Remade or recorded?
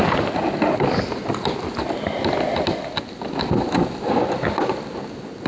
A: recorded